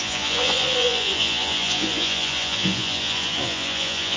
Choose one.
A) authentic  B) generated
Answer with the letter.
B